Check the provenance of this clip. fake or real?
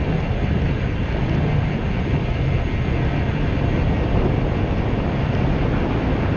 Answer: real